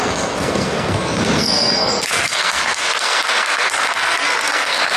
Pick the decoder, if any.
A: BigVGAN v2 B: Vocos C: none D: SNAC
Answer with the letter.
D